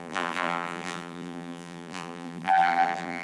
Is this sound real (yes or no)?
no